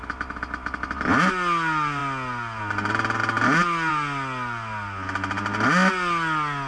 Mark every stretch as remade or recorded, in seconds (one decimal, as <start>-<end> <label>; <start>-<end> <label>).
0.0-6.7 recorded